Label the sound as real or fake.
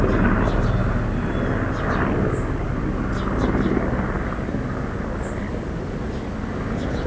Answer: real